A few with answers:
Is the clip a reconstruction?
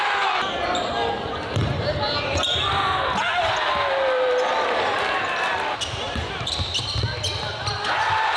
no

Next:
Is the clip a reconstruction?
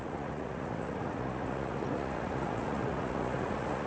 yes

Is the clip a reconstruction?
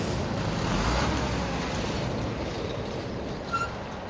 no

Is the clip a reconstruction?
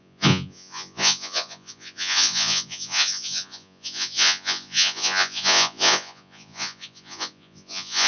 yes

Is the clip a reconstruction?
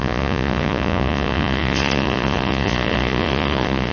yes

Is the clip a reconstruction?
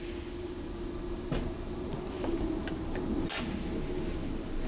no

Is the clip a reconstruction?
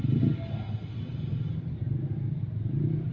no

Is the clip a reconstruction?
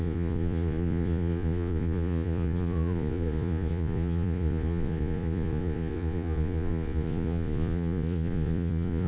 yes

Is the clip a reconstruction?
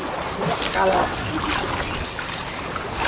no